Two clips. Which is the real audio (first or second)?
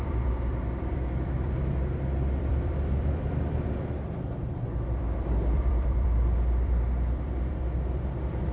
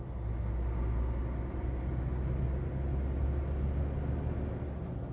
second